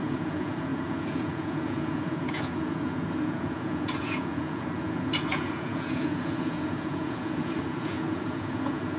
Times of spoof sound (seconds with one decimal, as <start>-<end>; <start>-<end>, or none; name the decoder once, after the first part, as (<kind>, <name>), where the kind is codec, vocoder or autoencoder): 0.0-9.0 (vocoder, Vocos)